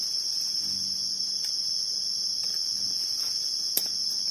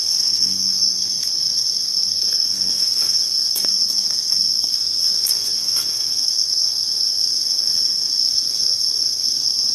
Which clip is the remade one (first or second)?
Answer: second